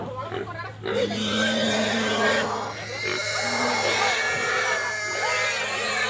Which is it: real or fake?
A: real